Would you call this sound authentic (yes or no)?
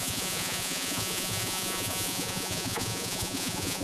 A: no